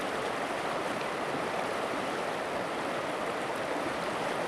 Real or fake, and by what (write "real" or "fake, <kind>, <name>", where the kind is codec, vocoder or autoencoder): real